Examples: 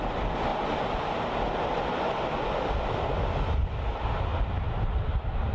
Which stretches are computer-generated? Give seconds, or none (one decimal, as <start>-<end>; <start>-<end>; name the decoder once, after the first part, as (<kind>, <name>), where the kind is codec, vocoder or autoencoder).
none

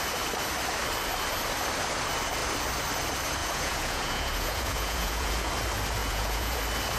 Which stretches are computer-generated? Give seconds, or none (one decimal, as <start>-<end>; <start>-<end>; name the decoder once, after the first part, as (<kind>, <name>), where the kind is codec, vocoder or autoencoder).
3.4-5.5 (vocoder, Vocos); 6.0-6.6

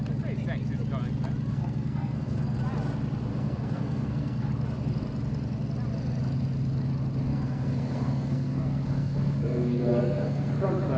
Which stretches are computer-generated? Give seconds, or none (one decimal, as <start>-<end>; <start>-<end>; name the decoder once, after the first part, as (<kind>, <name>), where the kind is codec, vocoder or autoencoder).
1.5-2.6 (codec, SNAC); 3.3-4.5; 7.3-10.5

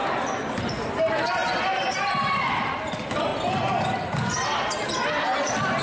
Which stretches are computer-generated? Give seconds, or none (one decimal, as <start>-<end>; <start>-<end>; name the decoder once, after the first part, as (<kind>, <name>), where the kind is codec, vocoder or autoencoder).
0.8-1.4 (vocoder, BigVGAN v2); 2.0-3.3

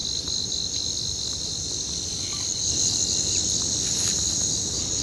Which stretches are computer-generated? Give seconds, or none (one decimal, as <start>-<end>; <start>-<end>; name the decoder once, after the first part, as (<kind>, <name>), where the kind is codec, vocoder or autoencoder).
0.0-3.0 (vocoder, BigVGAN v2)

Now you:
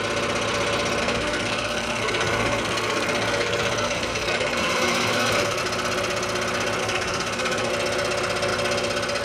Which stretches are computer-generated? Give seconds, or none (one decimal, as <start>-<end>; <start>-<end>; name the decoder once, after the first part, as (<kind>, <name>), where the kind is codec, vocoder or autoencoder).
1.0-5.6 (codec, SNAC); 6.8-7.7

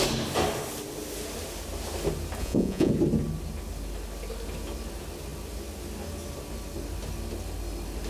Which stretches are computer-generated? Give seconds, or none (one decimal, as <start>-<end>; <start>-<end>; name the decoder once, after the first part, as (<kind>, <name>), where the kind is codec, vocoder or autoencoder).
2.4-2.9 (vocoder, Vocos)